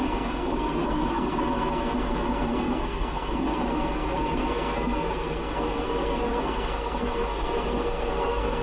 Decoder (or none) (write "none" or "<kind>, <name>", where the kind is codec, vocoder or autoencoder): codec, SNAC